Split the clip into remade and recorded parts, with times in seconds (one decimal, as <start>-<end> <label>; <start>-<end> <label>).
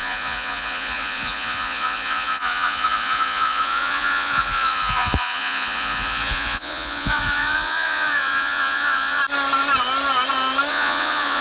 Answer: 0.0-9.2 remade; 9.2-10.7 recorded; 10.7-11.4 remade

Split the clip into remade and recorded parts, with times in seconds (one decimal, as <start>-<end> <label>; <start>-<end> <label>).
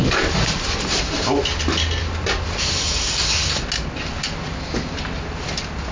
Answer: 0.0-5.9 recorded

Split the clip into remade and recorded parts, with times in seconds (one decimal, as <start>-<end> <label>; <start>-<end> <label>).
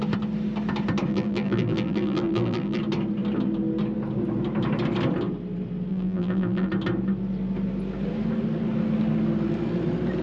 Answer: 0.0-1.1 recorded; 1.1-2.8 remade; 2.8-5.9 recorded; 5.9-6.7 remade; 6.7-10.2 recorded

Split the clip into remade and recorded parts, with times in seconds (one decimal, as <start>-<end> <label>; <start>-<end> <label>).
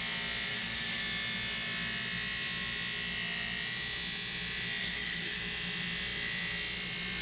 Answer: 0.0-0.5 recorded; 0.5-1.0 remade; 1.0-4.8 recorded; 4.8-5.4 remade; 5.4-7.2 recorded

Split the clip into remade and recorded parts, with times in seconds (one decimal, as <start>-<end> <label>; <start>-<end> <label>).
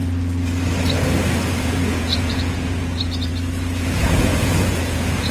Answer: 0.0-1.6 recorded; 1.6-3.3 remade; 3.3-3.8 recorded; 3.8-5.3 remade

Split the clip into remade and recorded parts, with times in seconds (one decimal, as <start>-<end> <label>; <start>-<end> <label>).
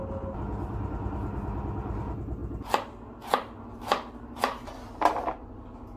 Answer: 0.0-6.0 recorded